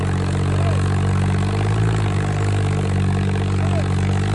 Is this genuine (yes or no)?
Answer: yes